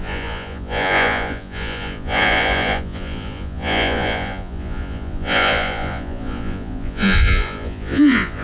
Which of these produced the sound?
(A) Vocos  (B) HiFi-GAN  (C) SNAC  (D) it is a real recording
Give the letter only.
A